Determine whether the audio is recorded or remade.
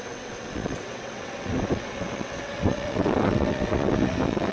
remade